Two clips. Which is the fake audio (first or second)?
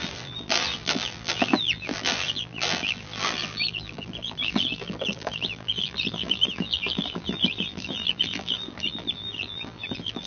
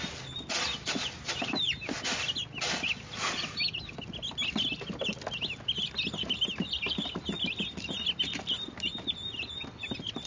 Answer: first